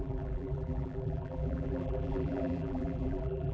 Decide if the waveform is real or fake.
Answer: fake